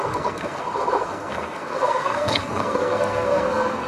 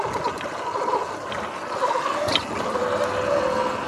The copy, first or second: first